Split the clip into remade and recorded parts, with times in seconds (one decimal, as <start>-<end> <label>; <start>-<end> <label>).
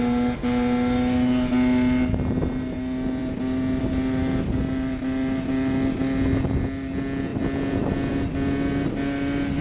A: 0.0-9.6 recorded